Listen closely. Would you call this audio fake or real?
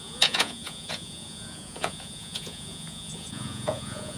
fake